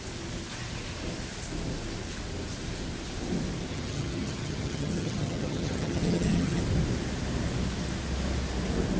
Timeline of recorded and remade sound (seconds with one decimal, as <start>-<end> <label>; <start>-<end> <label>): 0.0-3.7 recorded; 3.7-6.6 remade; 6.6-9.0 recorded